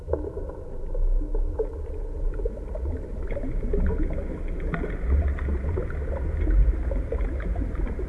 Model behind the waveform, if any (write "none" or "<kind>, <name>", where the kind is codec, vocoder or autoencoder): none